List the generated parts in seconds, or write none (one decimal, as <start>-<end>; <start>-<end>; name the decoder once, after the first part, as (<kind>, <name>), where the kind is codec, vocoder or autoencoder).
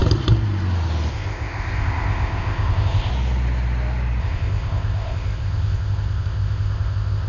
1.1-3.1 (codec, ZipCodec); 4.2-7.3